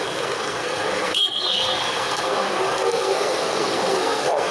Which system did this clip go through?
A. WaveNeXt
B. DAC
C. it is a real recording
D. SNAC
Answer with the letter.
D